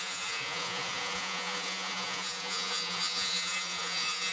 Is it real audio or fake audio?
fake